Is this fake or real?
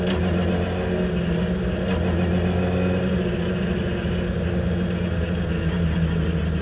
real